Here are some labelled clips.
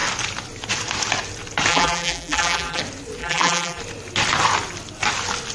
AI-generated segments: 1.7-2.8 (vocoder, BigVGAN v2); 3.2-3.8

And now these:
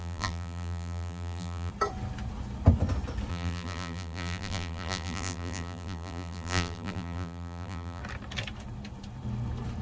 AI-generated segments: 0.0-1.7 (vocoder, BigVGAN v2); 3.3-8.0